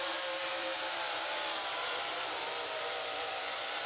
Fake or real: fake